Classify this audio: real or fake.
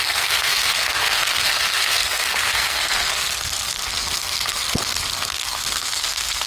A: fake